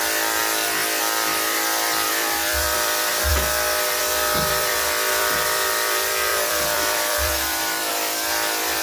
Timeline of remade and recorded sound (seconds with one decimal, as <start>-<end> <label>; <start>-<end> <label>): 0.0-0.4 remade; 0.4-1.0 recorded; 1.0-3.3 remade; 3.3-4.0 recorded; 4.0-8.8 remade